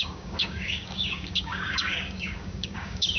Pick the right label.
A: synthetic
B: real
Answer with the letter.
A